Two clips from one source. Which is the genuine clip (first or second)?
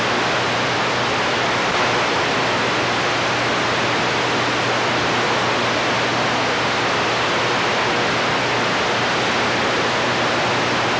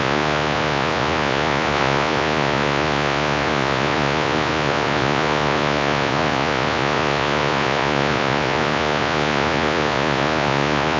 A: first